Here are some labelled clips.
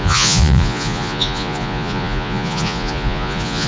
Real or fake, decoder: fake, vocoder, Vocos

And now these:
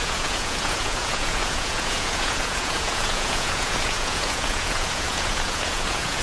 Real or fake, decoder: fake, vocoder, Vocos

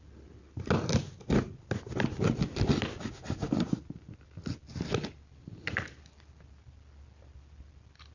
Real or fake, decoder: real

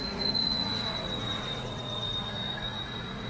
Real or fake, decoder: fake, vocoder, Vocos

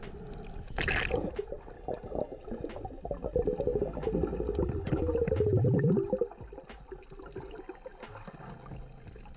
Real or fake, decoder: real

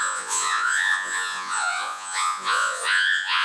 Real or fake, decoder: fake, vocoder, Vocos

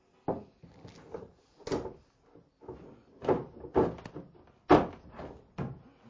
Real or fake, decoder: real